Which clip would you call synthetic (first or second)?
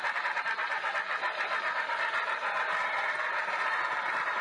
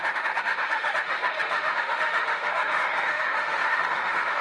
second